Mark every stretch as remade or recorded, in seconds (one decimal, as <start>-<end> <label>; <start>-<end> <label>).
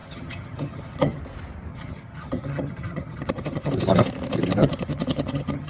0.0-1.2 remade; 1.2-1.7 recorded; 1.7-3.7 remade; 3.7-4.6 recorded; 4.6-5.7 remade